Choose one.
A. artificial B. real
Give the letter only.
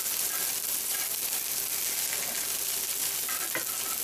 B